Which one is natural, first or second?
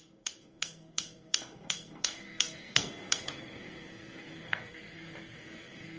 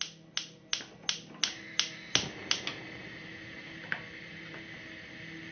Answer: second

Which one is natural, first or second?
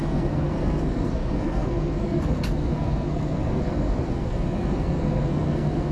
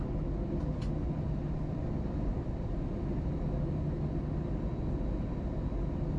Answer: second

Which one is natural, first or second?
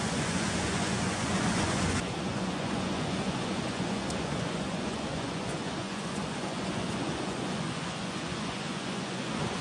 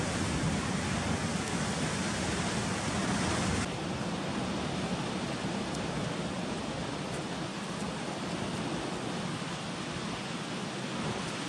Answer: second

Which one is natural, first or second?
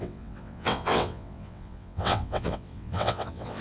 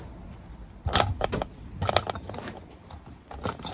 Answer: second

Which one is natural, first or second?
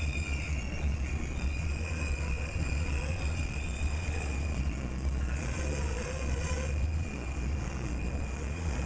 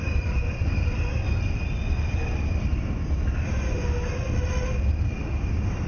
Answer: second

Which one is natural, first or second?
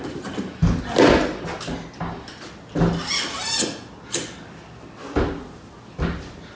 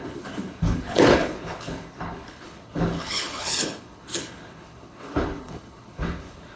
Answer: first